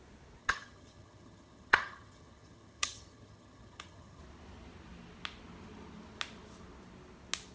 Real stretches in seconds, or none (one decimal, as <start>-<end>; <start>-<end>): 0.0-0.4; 4.2-7.5